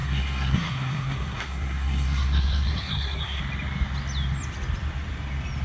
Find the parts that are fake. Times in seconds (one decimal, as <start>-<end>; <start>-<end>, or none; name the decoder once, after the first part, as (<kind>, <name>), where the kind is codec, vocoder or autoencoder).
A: 0.0-3.4 (codec, SNAC)